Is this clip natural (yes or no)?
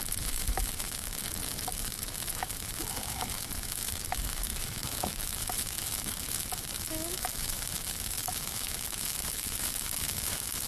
no